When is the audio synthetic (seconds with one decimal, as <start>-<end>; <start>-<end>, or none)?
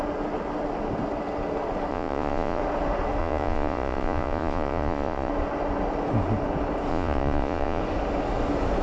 1.9-2.6; 3.2-5.3; 6.9-7.8